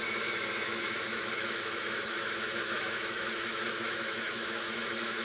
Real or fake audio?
fake